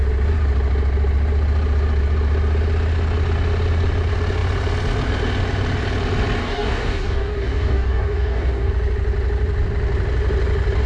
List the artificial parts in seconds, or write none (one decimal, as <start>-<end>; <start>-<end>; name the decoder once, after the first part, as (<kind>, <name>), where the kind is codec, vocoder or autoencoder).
6.4-8.7 (codec, DAC)